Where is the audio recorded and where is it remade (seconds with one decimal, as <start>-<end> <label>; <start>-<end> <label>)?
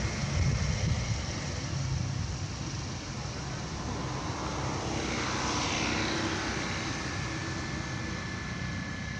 0.0-9.2 recorded